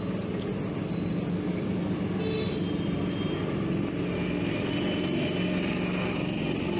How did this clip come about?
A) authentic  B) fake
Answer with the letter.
A